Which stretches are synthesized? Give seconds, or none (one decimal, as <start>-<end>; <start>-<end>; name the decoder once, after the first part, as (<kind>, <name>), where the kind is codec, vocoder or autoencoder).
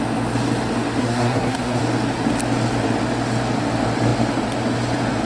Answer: 1.0-1.8 (codec, SNAC)